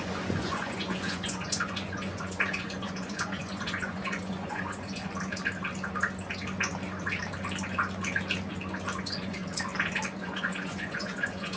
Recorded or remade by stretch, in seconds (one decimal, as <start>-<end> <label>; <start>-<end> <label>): 0.0-5.0 remade; 5.0-9.0 recorded; 9.0-9.4 remade; 9.4-10.2 recorded; 10.2-11.6 remade